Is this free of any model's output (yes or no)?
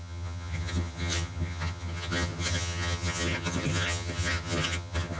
no